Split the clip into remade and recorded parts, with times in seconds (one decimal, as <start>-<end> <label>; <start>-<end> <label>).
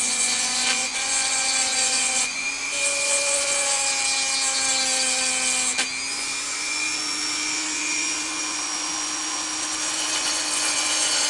0.0-3.8 remade; 3.8-6.1 recorded; 6.1-11.3 remade